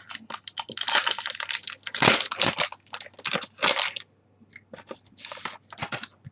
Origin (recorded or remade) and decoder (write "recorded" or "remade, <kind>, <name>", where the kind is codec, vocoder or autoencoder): recorded